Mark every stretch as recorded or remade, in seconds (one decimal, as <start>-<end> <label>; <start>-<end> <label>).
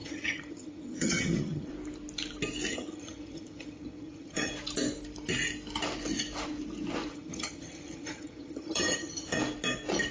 0.0-1.7 remade; 1.7-2.7 recorded; 2.7-4.5 remade; 4.5-7.1 recorded; 7.1-9.4 remade; 9.4-10.1 recorded